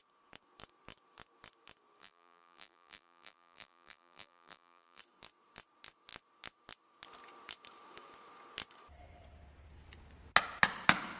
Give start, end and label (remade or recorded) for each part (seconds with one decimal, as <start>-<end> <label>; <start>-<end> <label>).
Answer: 0.0-2.0 recorded; 2.0-5.0 remade; 5.0-11.2 recorded